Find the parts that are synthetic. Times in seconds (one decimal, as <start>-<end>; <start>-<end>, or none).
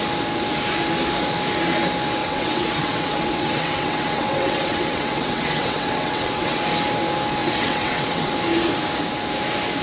2.2-6.6; 7.4-8.3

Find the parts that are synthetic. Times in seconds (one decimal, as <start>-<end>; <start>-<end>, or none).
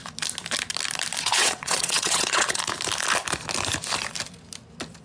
1.2-2.6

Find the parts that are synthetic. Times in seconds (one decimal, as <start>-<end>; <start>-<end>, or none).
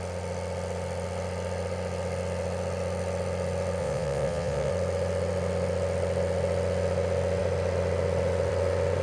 3.8-4.7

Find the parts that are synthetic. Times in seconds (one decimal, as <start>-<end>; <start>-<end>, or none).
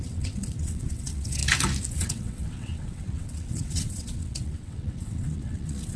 0.0-1.4; 1.9-6.0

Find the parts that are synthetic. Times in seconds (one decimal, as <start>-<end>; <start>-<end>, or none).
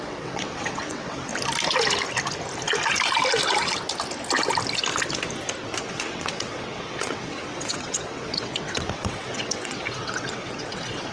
0.0-1.3; 5.8-11.1